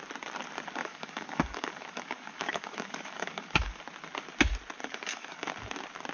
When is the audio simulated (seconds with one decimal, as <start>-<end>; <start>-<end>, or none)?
0.8-3.8; 4.8-5.5